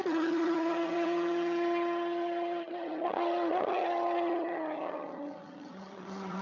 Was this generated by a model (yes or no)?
yes